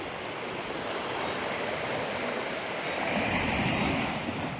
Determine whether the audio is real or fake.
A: real